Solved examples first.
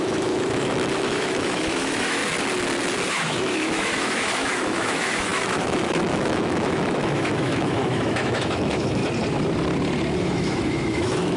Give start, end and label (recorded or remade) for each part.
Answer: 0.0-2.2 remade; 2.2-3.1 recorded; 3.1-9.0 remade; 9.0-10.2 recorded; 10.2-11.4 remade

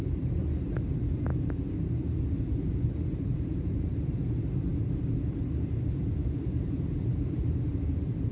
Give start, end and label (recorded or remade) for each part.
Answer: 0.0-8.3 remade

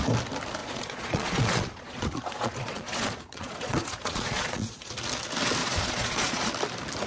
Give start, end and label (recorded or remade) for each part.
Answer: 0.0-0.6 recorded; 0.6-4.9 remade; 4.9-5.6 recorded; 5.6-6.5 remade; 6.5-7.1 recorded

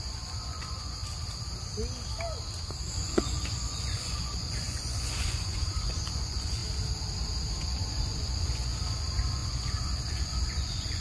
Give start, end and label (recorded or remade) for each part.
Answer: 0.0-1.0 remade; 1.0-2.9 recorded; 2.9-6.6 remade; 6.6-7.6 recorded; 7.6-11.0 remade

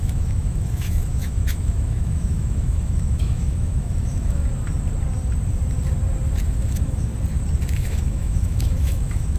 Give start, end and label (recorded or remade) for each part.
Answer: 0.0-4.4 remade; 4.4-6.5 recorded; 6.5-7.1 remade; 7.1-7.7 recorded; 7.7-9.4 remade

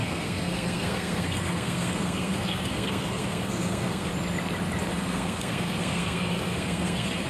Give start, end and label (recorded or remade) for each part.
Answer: 0.0-4.1 remade; 4.1-4.9 recorded; 4.9-7.3 remade

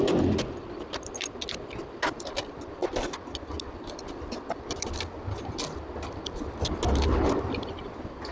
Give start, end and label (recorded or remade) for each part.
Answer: 0.0-8.3 recorded